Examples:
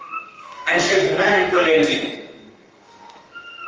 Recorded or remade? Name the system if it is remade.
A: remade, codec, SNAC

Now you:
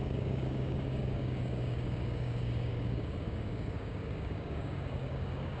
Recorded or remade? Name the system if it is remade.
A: remade, codec, DAC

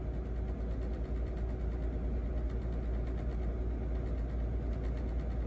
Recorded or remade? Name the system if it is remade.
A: recorded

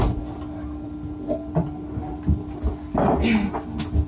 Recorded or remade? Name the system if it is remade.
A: recorded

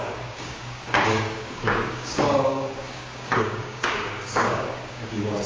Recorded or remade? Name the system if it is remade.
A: remade, codec, DAC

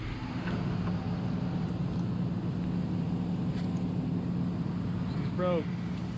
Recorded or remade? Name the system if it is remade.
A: recorded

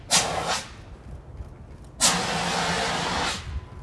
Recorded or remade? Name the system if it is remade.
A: recorded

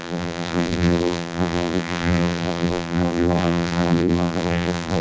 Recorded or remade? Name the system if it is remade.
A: remade, vocoder, BigVGAN v2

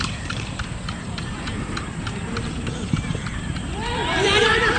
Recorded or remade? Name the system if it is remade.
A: remade, vocoder, BigVGAN v2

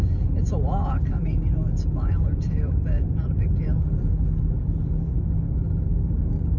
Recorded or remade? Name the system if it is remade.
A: recorded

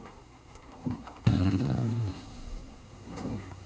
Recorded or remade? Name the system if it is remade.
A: remade, codec, SNAC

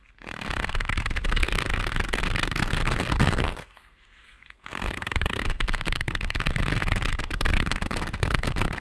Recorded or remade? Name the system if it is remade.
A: remade, codec, SNAC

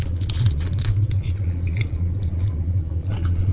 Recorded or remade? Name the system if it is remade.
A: remade, vocoder, Vocos